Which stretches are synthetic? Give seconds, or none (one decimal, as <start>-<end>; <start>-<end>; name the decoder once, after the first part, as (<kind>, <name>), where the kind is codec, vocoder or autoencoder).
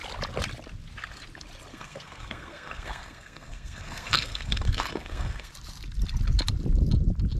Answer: 1.7-5.5 (codec, SNAC)